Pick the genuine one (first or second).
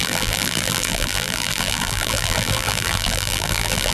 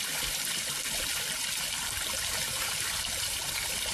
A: second